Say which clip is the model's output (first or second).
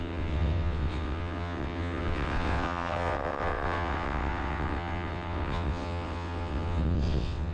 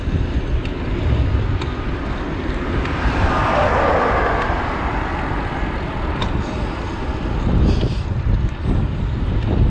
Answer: first